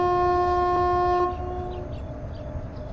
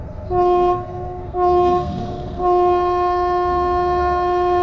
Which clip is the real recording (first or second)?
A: first